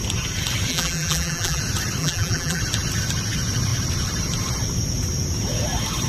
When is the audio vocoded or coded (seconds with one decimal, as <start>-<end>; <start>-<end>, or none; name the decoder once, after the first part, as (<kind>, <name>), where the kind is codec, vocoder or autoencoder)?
0.7-1.6 (vocoder, BigVGAN v2); 2.0-2.6